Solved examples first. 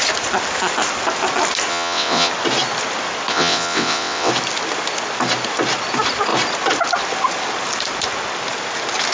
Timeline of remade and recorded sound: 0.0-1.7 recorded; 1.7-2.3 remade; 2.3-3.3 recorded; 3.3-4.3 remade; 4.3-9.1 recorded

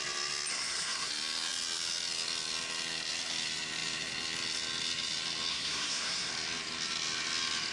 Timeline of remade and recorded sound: 0.0-0.5 recorded; 0.5-1.1 remade; 1.1-5.5 recorded; 5.5-6.3 remade; 6.3-7.7 recorded

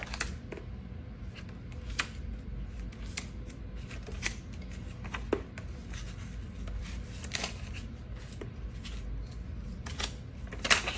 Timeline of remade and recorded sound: 0.0-11.0 recorded

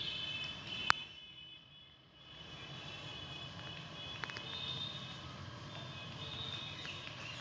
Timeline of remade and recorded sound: 0.0-7.4 recorded